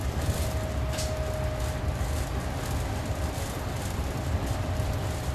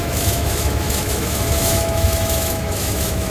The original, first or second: first